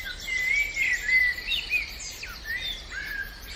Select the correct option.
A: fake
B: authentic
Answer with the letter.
B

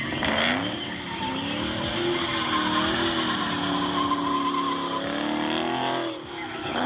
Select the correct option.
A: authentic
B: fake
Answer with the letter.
A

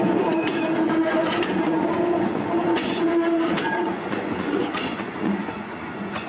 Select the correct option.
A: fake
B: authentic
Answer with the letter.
A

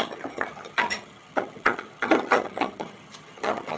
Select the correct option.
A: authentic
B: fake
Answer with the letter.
B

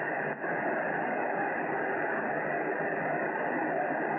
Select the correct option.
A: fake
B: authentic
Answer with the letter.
B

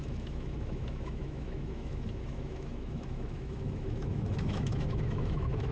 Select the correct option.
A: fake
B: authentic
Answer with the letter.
A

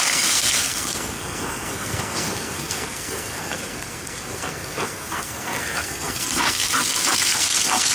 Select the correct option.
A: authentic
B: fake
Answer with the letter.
B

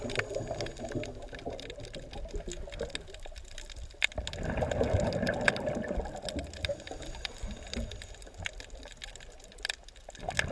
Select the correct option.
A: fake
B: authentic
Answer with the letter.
B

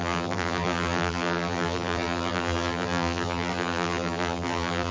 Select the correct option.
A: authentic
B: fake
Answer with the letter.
B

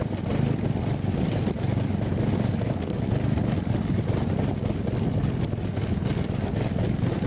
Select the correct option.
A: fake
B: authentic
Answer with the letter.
B